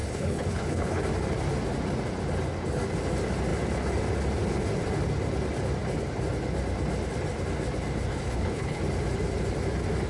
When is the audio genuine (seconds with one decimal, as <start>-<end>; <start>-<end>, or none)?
1.0-8.1; 8.8-10.1